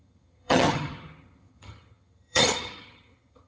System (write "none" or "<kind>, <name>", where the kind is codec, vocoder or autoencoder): vocoder, HiFi-GAN